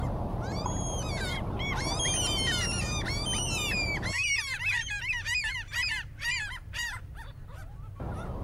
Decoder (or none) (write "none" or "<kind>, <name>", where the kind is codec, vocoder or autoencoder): vocoder, BigVGAN v2